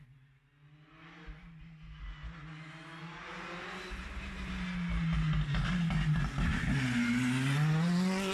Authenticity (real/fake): real